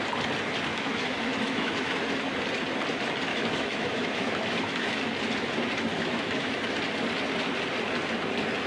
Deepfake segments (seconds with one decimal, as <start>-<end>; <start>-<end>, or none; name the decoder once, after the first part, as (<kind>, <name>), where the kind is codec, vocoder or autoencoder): 0.7-2.2 (autoencoder, DAC-VAE); 3.3-5.0; 5.9-6.6